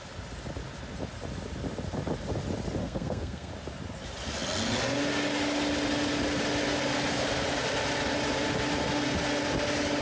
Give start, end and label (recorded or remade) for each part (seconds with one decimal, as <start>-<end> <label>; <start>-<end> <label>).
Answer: 0.0-2.8 recorded; 2.8-3.5 remade; 3.5-10.0 recorded